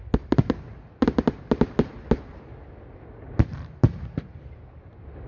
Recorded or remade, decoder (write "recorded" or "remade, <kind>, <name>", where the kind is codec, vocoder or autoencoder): recorded